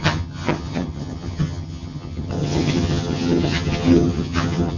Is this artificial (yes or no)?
yes